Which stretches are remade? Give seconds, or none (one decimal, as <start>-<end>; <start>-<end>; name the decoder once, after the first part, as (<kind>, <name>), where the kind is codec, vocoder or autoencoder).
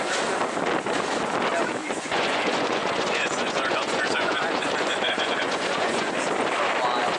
1.8-6.1 (vocoder, Vocos)